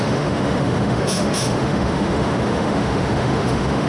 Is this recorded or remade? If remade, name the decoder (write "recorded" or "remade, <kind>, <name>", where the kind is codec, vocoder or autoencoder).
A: remade, autoencoder, DAC-VAE